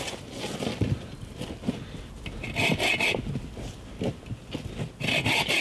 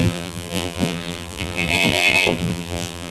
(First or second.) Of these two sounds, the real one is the first